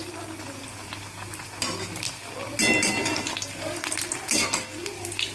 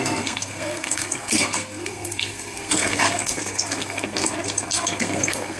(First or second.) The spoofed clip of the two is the second